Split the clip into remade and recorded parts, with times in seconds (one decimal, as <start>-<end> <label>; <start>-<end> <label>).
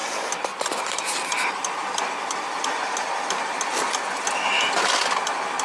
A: 0.0-3.4 remade; 3.4-5.6 recorded